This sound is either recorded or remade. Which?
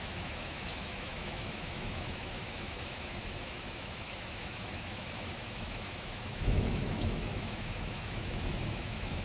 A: remade